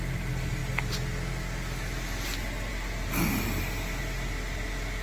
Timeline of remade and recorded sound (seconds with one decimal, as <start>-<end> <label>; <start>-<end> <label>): 0.0-5.0 recorded